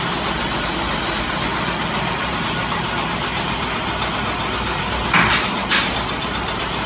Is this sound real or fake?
real